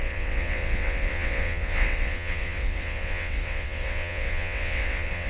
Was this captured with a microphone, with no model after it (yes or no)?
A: no